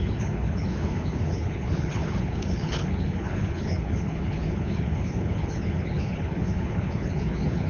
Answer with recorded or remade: remade